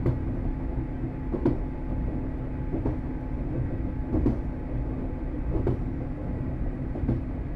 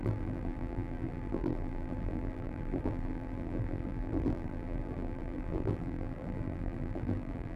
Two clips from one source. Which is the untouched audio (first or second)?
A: first